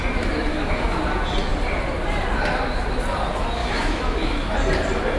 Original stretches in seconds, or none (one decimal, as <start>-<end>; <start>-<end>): 0.0-0.5; 1.0-3.6; 4.5-5.2